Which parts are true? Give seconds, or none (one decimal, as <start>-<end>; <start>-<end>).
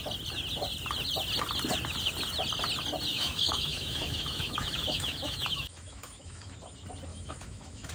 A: 0.0-3.1; 6.5-7.1